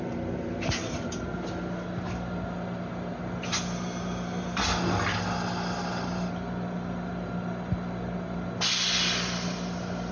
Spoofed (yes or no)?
no